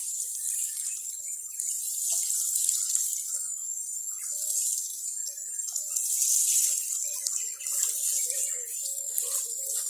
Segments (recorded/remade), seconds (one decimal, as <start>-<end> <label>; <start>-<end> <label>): 0.0-3.6 recorded; 3.6-4.2 remade; 4.2-4.8 recorded; 4.8-5.8 remade; 5.8-9.9 recorded